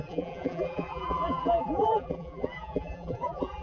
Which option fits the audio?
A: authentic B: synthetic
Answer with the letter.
B